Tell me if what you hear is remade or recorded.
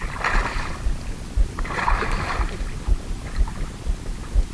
recorded